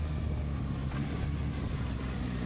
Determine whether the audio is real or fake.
real